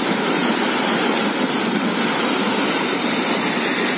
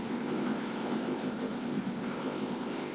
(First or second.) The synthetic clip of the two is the second